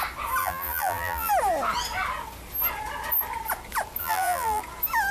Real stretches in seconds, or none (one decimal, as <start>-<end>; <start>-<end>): 0.0-0.4; 1.3-4.0; 4.6-5.1